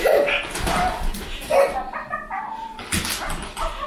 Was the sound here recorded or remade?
recorded